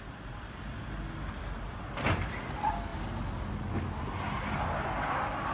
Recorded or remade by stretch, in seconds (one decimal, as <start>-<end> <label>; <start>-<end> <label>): 0.0-5.5 recorded